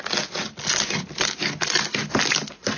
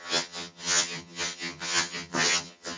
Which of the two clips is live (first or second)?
first